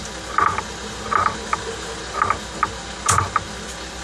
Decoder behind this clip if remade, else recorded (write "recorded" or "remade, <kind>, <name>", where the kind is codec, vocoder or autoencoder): recorded